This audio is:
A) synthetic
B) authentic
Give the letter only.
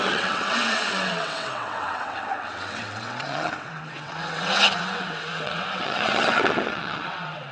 A